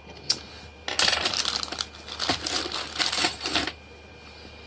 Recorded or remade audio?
recorded